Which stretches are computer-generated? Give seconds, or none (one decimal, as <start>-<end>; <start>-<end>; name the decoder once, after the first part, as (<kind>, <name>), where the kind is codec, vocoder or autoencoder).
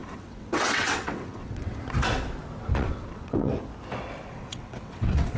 0.0-1.8 (vocoder, WaveNeXt); 2.7-3.5; 4.3-5.4